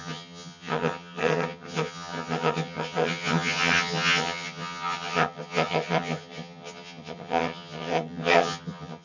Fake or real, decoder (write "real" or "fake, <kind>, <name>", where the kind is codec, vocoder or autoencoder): fake, vocoder, HiFi-GAN